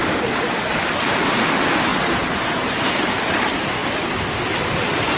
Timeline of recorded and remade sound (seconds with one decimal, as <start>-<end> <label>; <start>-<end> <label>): 0.0-1.9 remade; 1.9-2.7 recorded; 2.7-5.2 remade